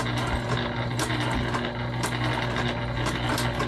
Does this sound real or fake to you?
real